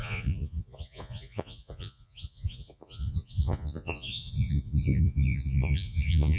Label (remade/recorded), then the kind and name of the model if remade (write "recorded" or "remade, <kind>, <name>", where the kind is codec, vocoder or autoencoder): remade, vocoder, Vocos